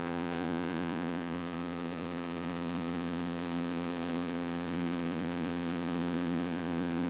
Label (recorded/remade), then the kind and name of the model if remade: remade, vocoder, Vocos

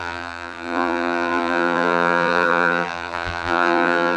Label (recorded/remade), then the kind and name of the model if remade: remade, vocoder, BigVGAN v2